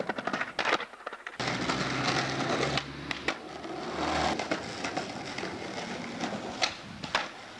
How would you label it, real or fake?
real